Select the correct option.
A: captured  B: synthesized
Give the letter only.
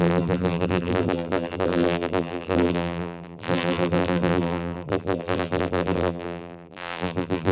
B